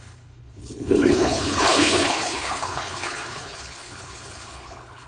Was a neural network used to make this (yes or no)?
yes